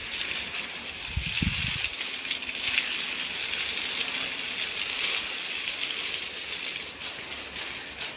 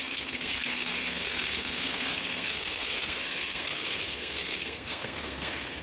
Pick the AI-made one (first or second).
second